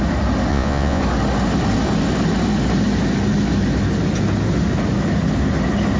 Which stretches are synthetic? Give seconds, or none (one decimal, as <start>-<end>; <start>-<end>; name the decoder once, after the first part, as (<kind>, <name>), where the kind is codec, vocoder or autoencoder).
0.5-1.0 (vocoder, Vocos)